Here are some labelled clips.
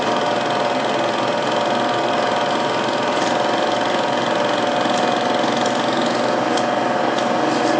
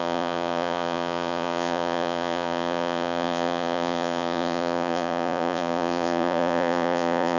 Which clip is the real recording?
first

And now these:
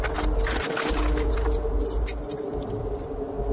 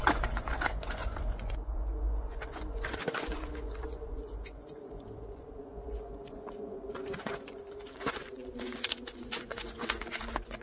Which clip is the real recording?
first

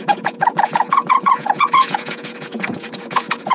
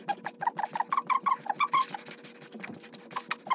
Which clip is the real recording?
second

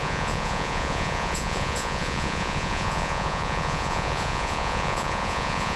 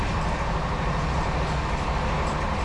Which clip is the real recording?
second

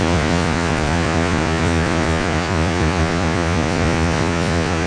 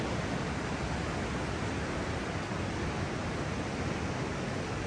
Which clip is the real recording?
second